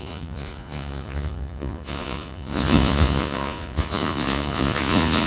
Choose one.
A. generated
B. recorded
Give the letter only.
A